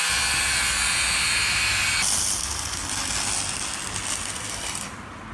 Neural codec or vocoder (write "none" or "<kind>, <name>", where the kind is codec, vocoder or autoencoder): none